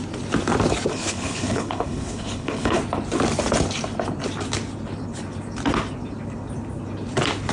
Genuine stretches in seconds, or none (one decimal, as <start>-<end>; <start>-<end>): 0.0-0.9; 2.8-7.5